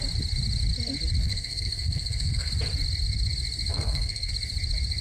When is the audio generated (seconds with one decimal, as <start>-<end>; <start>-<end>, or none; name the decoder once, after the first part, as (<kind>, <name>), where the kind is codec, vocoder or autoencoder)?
1.2-2.5 (codec, SNAC); 3.7-4.3